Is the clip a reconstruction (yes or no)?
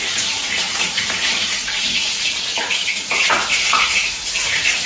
yes